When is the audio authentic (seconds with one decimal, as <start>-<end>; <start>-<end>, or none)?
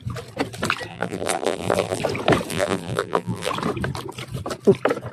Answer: 0.0-0.9; 2.0-2.5; 3.5-5.1